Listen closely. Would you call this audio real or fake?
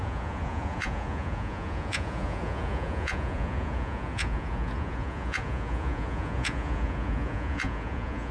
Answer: fake